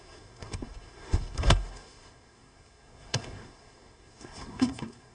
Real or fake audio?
fake